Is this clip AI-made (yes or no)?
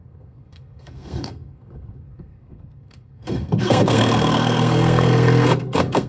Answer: yes